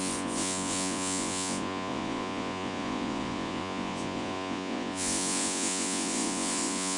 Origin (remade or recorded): remade